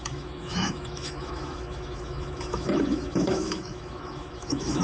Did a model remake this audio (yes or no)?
yes